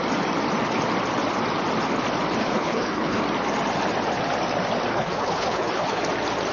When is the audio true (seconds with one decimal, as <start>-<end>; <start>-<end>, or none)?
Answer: 0.0-2.4; 3.2-4.9; 6.0-6.5